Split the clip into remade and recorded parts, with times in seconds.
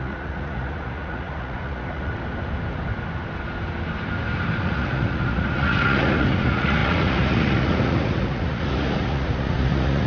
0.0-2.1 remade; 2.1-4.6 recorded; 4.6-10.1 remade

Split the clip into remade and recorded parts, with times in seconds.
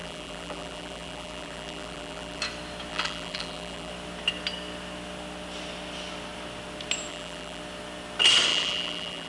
0.0-2.4 remade; 2.4-2.9 recorded; 2.9-3.9 remade; 3.9-7.1 recorded; 7.1-7.6 remade; 7.6-8.5 recorded; 8.5-9.3 remade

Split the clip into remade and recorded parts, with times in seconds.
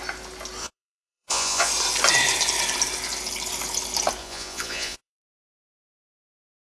0.0-0.6 recorded; 0.6-1.7 remade; 1.7-4.2 recorded; 4.2-6.1 remade; 6.1-6.8 recorded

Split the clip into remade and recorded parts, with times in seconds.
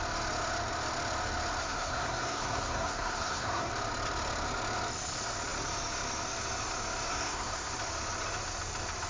0.0-1.6 recorded; 1.6-3.7 remade; 3.7-7.1 recorded; 7.1-7.7 remade; 7.7-9.1 recorded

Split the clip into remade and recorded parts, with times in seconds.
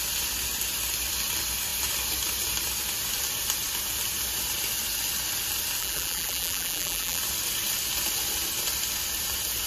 0.0-5.8 recorded; 5.8-7.2 remade; 7.2-9.7 recorded